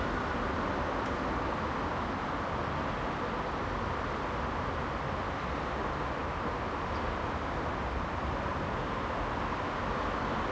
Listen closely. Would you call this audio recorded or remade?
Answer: recorded